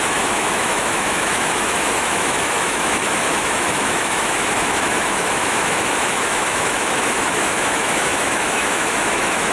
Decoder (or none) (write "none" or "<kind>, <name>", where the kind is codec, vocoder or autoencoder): autoencoder, DAC-VAE